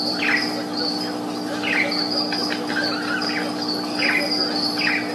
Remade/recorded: remade